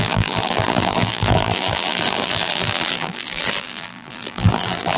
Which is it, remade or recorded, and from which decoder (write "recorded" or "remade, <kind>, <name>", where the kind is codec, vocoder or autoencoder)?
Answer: remade, vocoder, BigVGAN v2